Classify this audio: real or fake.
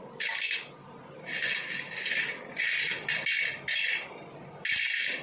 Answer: real